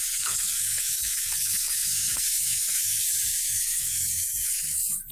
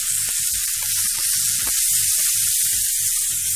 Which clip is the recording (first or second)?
second